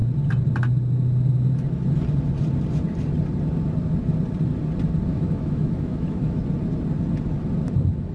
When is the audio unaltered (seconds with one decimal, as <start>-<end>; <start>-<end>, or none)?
0.0-5.1; 6.4-8.1